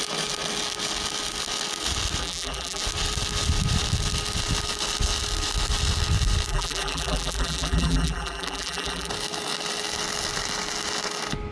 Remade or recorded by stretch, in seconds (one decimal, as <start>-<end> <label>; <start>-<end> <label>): 0.0-2.2 recorded; 2.2-2.8 remade; 2.8-6.5 recorded; 6.5-9.1 remade; 9.1-11.5 recorded